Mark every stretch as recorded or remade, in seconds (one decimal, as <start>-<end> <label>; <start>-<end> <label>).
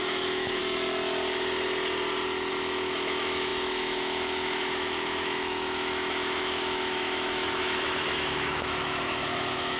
0.0-0.6 remade; 0.6-2.5 recorded; 2.5-9.8 remade